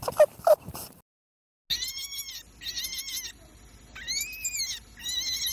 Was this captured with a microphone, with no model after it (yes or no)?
yes